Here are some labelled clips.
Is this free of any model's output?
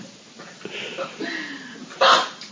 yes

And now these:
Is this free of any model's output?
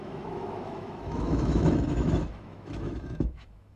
no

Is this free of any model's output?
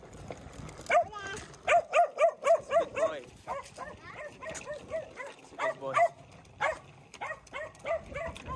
yes